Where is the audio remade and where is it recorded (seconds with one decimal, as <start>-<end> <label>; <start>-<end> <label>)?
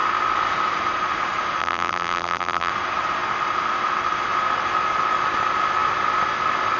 0.0-1.6 recorded; 1.6-2.7 remade; 2.7-6.8 recorded